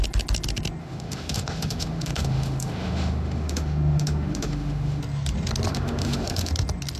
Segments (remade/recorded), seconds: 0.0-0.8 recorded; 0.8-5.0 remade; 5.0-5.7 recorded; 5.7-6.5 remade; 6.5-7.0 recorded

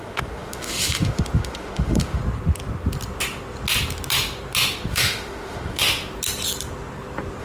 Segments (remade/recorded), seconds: 0.0-2.2 remade; 2.2-4.9 recorded; 4.9-5.8 remade; 5.8-7.4 recorded

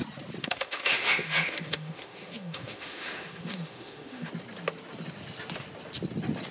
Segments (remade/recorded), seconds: 0.0-0.4 recorded; 0.4-4.3 remade; 4.3-6.5 recorded